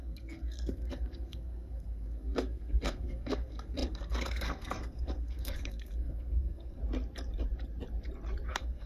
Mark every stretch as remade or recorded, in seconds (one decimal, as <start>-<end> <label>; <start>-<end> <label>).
0.0-6.8 remade; 6.8-8.5 recorded; 8.5-8.9 remade